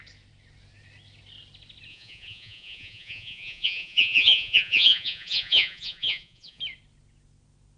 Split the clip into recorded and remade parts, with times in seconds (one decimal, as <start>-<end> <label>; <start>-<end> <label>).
0.0-1.9 recorded; 1.9-6.6 remade; 6.6-7.8 recorded